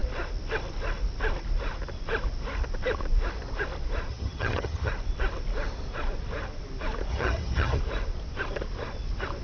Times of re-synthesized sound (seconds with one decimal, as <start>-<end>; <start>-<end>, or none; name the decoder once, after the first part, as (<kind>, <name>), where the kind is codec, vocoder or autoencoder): 4.1-4.9 (vocoder, HiFi-GAN); 7.1-7.8